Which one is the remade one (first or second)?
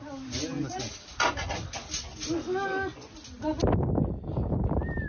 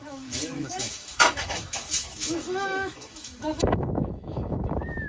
second